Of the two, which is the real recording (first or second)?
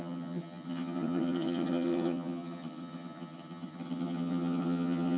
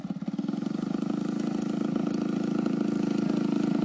second